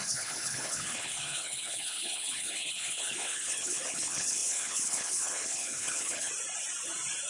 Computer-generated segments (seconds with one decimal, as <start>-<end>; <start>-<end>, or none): 0.0-6.3